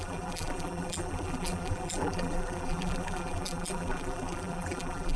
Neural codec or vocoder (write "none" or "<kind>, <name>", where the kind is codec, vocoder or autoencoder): vocoder, BigVGAN v2